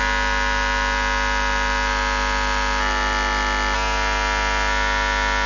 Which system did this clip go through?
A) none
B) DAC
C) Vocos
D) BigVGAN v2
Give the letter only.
A